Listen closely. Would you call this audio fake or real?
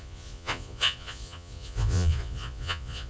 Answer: fake